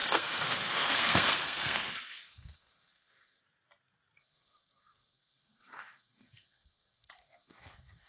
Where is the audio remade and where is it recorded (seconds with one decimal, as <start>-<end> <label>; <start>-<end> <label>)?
0.0-3.4 remade; 3.4-4.2 recorded; 4.2-8.1 remade